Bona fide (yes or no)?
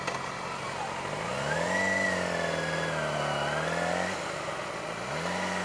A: yes